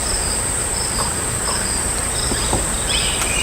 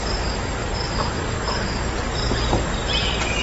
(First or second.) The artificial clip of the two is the first